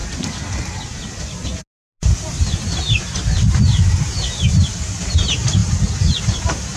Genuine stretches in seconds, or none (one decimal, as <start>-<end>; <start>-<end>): 0.0-0.9; 1.5-2.3; 5.6-6.2